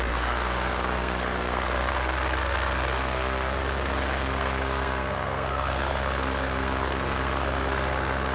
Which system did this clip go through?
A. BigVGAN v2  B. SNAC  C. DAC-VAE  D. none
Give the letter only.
B